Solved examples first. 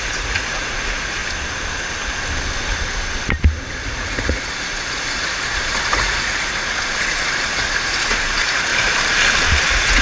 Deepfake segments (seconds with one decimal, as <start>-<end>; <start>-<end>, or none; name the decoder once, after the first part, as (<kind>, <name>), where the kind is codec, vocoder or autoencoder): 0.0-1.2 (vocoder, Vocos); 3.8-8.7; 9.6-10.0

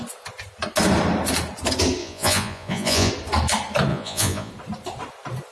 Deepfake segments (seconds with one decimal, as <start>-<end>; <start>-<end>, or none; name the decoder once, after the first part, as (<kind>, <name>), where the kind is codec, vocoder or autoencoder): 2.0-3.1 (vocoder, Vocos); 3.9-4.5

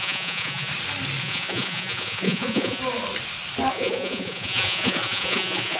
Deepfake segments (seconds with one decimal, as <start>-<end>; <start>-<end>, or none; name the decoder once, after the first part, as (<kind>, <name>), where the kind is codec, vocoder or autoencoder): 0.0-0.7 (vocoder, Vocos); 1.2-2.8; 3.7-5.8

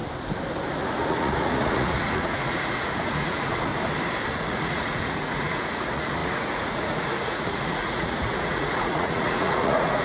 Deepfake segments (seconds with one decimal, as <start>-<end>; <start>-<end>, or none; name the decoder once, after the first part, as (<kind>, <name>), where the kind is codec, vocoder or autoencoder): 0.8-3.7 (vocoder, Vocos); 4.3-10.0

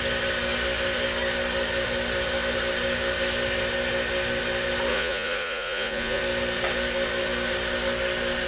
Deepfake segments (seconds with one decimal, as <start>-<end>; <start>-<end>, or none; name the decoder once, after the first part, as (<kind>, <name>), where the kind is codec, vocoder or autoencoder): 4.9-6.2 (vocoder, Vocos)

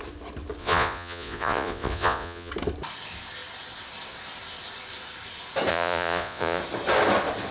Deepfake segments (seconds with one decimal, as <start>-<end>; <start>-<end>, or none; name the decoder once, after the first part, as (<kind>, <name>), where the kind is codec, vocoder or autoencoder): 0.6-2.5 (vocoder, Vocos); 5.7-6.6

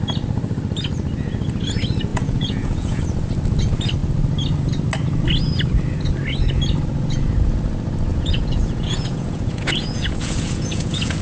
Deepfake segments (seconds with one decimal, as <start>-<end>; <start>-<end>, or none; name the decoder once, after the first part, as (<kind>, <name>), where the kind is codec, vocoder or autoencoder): 2.1-3.0 (vocoder, Vocos); 8.1-11.2